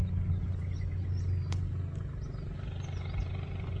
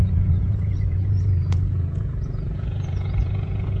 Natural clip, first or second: first